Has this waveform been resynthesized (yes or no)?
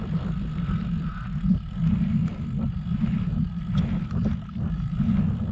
no